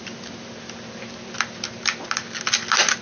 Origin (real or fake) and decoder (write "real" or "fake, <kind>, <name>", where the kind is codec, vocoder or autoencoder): real